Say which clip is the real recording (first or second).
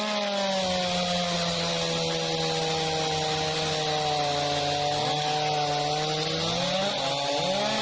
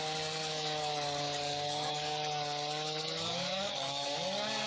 first